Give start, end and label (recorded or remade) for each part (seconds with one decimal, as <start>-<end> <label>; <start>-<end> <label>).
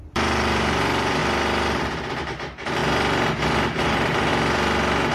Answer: 0.0-1.2 remade; 1.2-2.1 recorded; 2.1-2.8 remade; 2.8-3.8 recorded; 3.8-4.3 remade; 4.3-5.1 recorded